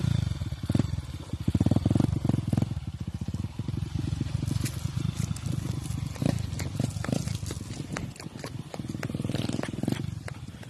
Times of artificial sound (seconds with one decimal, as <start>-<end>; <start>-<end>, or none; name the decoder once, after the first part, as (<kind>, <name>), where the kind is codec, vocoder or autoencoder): none